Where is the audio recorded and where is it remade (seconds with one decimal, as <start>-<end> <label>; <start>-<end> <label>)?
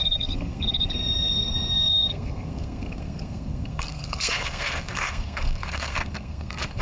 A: 0.0-6.8 remade